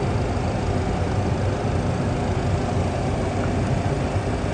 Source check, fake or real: real